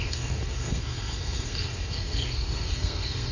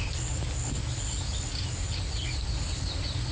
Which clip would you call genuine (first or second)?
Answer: second